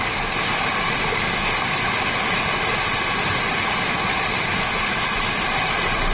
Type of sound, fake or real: real